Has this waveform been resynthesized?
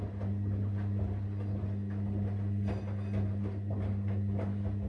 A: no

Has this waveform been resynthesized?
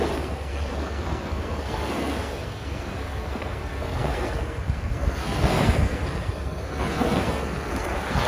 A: yes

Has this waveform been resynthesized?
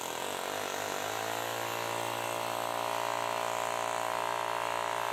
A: no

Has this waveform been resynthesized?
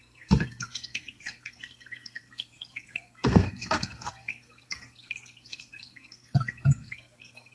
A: yes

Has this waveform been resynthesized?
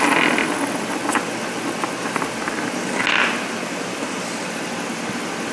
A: no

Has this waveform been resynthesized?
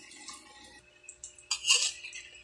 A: no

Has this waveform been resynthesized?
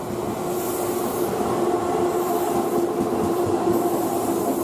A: no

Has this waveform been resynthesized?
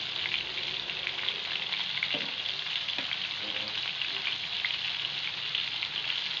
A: no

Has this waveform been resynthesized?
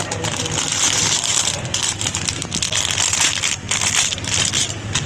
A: no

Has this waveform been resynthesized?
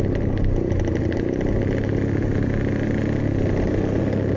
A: no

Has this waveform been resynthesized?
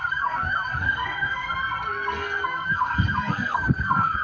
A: yes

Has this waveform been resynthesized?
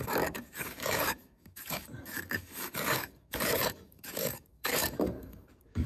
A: yes